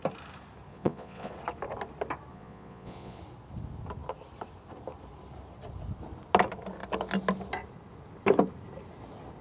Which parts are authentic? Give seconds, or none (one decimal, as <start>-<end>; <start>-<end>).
0.0-0.7; 1.3-2.3; 3.2-9.4